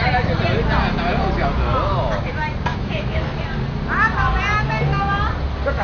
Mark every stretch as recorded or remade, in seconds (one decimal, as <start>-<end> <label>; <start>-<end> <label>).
0.0-2.7 recorded; 2.7-3.2 remade; 3.2-5.8 recorded